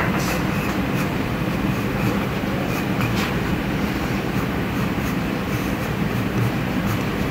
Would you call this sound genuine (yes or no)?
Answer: no